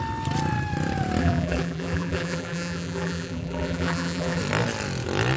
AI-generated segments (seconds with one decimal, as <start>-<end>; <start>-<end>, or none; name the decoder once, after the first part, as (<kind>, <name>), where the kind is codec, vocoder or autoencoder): 1.2-4.4 (vocoder, BigVGAN v2)